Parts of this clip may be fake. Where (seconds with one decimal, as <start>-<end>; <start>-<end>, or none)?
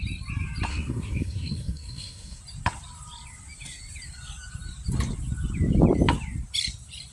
0.7-2.4